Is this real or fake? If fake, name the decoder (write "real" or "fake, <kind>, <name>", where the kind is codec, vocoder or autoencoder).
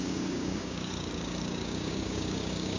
fake, codec, DAC